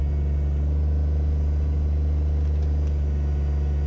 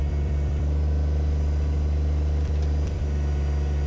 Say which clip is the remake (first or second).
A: second